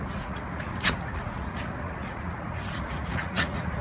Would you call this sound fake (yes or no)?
yes